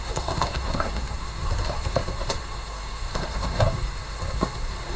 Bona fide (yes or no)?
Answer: no